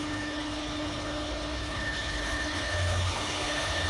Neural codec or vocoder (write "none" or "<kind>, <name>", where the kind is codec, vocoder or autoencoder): codec, HILCodec